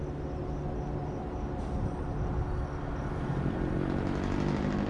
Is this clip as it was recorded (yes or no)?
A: yes